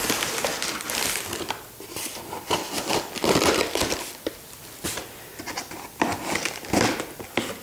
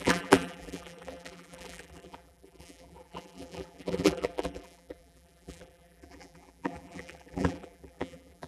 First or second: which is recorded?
first